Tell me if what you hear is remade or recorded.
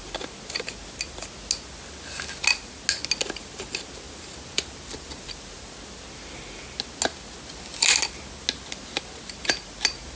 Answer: recorded